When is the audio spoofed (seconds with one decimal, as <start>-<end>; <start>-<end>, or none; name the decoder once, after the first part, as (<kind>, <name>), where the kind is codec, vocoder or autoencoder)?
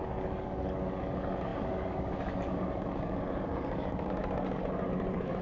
0.0-5.4 (codec, DAC)